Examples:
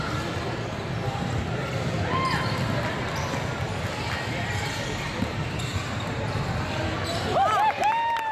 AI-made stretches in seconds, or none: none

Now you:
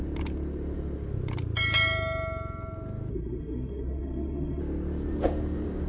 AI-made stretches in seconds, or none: 3.1-4.6 (codec, SNAC)